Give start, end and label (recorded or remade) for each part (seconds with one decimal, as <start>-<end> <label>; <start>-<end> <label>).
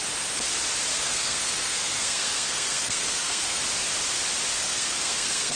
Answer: 0.0-0.9 recorded; 0.9-3.6 remade; 3.6-4.6 recorded; 4.6-5.6 remade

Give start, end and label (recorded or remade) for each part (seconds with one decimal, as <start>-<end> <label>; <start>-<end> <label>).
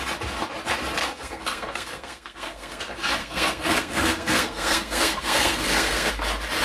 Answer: 0.0-1.0 recorded; 1.0-2.8 remade; 2.8-3.2 recorded; 3.2-6.1 remade; 6.1-6.6 recorded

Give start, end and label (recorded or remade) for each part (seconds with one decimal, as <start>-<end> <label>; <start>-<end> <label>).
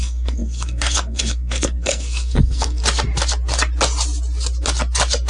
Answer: 0.0-2.8 remade; 2.8-5.3 recorded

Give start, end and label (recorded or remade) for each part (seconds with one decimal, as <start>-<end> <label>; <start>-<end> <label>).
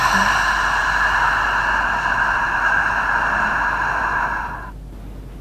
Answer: 0.0-5.4 recorded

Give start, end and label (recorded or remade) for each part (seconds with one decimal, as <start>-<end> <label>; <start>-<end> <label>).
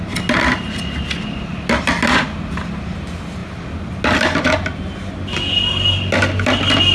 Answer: 0.0-6.9 recorded